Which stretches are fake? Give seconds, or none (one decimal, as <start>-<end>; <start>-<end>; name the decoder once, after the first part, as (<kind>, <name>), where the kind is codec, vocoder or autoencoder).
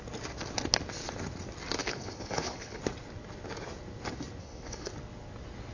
1.8-2.8 (codec, HILCodec); 4.4-4.9